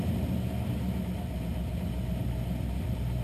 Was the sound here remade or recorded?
recorded